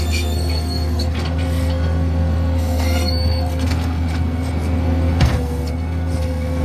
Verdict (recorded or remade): remade